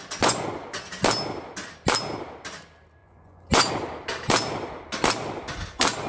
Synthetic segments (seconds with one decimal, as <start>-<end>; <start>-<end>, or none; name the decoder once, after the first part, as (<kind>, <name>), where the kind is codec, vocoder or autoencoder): 0.0-0.8 (vocoder, Vocos); 3.0-3.7